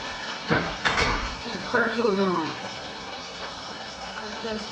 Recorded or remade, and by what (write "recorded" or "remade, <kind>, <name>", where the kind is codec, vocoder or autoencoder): remade, codec, SNAC